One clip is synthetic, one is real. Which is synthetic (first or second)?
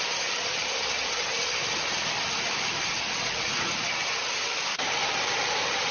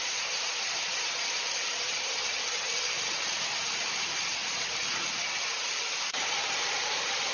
second